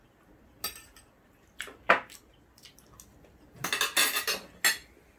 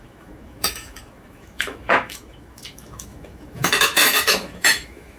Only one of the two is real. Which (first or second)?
first